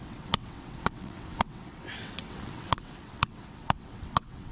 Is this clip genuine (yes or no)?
no